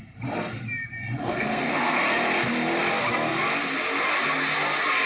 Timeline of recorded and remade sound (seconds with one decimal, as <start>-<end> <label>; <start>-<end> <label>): 0.0-1.2 recorded; 1.2-2.0 remade; 2.0-5.1 recorded